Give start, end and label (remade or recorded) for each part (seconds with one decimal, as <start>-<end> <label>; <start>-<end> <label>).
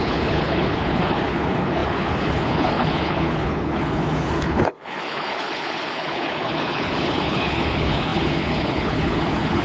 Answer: 0.0-9.6 remade